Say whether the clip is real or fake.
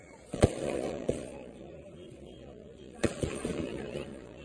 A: fake